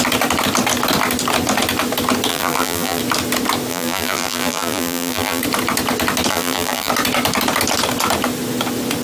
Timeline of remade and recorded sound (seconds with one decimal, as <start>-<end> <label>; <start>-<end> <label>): 0.0-2.3 recorded; 2.3-3.0 remade; 3.0-3.7 recorded; 3.7-5.4 remade; 5.4-6.3 recorded; 6.3-6.9 remade; 6.9-9.0 recorded